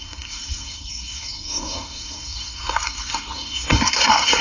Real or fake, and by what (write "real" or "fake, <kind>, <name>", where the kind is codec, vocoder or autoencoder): fake, codec, SNAC